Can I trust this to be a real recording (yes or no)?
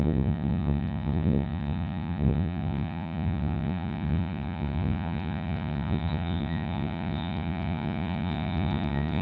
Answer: no